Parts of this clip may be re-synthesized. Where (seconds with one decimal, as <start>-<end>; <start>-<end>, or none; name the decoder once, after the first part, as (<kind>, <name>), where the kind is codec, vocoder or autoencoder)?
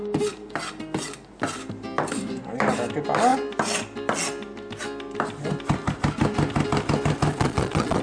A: 7.3-8.0 (vocoder, Vocos)